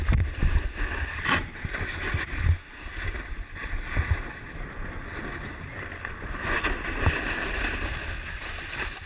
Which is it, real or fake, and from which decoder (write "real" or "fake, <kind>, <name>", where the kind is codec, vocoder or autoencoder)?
real